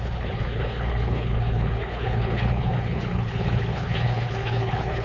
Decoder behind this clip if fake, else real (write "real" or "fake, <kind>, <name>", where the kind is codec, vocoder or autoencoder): fake, codec, HILCodec